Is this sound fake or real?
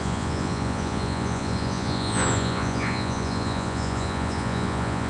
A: fake